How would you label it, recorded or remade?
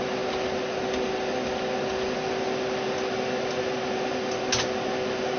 recorded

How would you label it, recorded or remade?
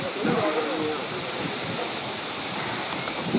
recorded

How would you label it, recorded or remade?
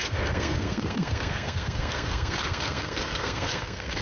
remade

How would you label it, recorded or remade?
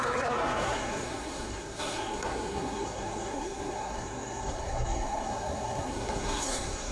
remade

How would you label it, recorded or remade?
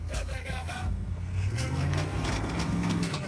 remade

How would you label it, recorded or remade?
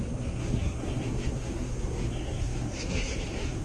remade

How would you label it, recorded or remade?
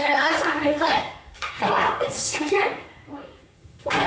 remade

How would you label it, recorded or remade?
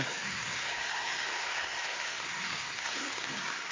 remade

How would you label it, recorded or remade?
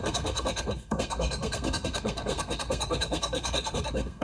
remade